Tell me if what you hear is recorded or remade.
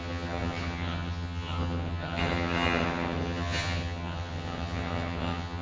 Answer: remade